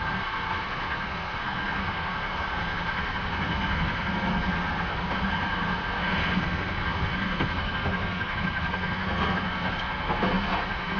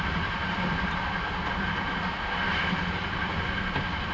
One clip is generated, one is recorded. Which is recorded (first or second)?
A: second